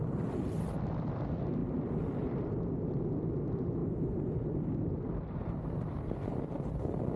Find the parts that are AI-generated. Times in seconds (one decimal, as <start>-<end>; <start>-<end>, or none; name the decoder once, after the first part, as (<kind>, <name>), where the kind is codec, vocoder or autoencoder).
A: none